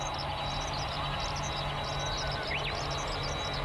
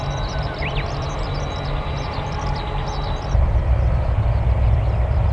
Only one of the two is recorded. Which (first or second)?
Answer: first